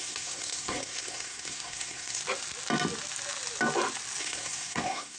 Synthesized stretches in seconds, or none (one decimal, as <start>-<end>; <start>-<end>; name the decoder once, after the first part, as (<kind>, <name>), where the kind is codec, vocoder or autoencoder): 0.0-2.2 (codec, SNAC); 4.2-5.2